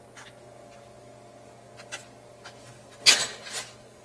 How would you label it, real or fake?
real